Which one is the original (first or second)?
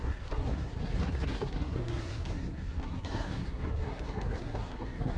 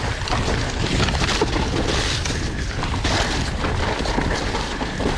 second